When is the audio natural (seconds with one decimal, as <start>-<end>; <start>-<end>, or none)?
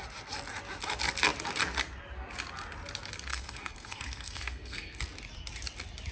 0.0-3.3; 5.0-6.1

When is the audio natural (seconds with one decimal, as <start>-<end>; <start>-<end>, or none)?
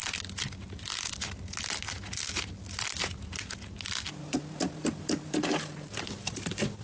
0.0-4.1